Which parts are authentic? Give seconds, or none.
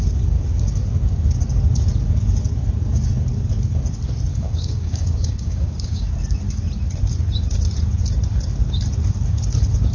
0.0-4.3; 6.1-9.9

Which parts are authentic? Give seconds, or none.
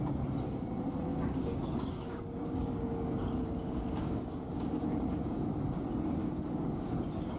0.0-1.1; 5.5-6.2; 7.0-7.4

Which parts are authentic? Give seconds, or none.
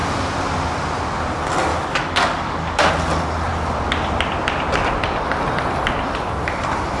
0.0-1.7; 2.9-7.0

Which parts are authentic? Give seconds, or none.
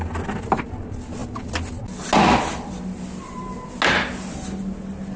0.0-5.2